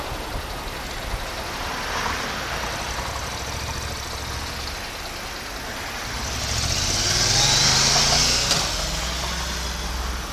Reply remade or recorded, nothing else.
recorded